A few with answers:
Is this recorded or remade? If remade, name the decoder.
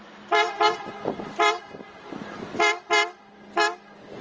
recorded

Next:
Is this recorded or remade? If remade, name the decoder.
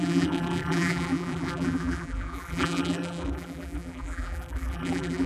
remade, vocoder, BigVGAN v2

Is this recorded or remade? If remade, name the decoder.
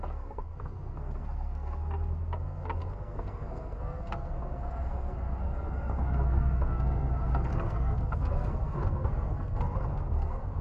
remade, codec, SNAC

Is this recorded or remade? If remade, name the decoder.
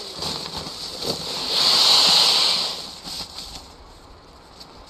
recorded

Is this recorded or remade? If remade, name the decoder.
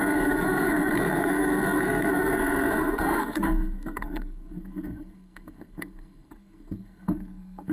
remade, codec, SNAC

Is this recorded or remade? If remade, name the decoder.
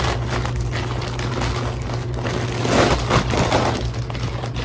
recorded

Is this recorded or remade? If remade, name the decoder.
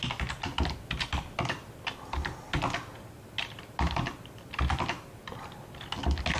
recorded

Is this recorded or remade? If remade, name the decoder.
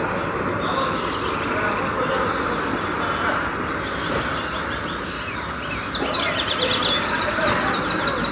recorded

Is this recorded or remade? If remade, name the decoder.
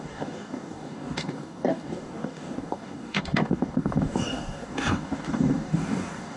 remade, codec, DAC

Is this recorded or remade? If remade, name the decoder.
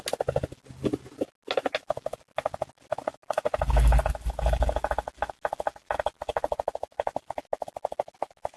recorded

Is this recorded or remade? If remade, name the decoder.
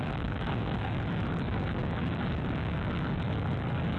remade, codec, DAC